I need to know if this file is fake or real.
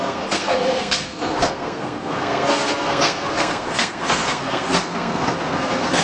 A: fake